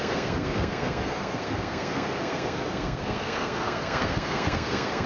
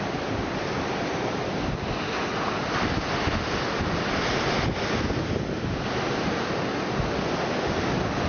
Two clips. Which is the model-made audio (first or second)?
first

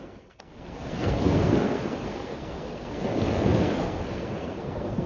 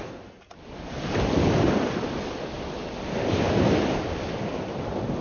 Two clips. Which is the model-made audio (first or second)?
first